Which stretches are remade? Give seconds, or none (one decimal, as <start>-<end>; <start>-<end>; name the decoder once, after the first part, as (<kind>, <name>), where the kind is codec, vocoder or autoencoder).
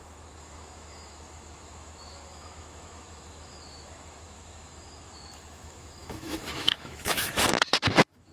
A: 0.0-8.3 (autoencoder, DAC-VAE)